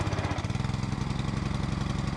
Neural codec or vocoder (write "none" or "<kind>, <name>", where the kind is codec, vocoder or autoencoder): none